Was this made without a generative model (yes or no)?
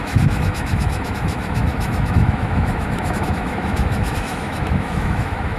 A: no